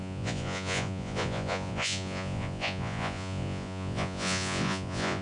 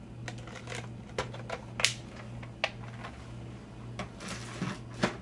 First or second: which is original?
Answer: second